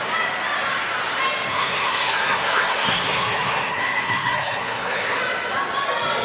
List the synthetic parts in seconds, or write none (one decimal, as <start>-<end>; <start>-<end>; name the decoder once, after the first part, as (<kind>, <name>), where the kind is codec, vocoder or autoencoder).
1.5-5.2 (codec, SNAC)